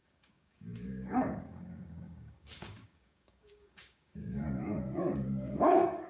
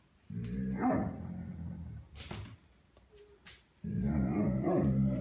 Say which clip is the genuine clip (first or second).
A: second